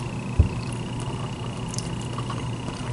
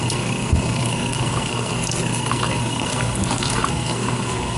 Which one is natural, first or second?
first